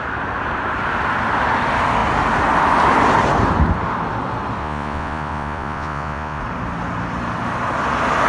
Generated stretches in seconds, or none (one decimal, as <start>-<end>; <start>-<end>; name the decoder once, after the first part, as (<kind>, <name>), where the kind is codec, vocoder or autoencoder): 4.6-6.4 (vocoder, Vocos)